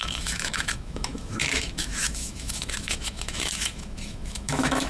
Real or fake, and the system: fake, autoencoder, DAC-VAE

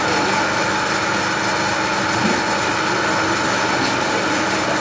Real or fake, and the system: real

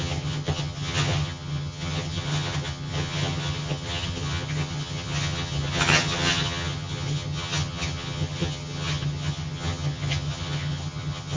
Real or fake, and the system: fake, vocoder, HiFi-GAN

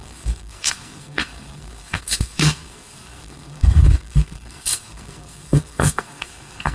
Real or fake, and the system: fake, codec, SNAC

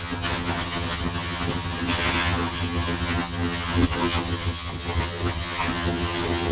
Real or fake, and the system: fake, vocoder, HiFi-GAN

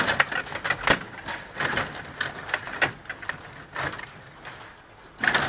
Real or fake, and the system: real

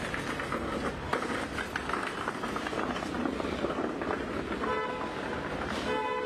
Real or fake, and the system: real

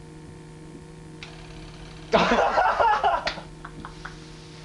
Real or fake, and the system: real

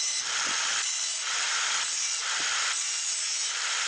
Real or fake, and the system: real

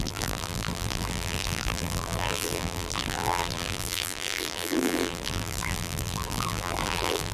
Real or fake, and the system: fake, vocoder, BigVGAN v2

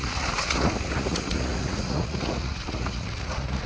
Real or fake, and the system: fake, vocoder, Vocos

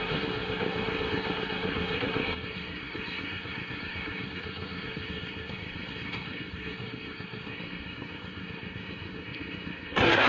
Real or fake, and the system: fake, codec, SNAC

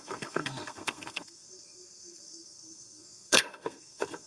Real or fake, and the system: fake, codec, SNAC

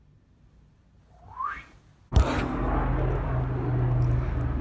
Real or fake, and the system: real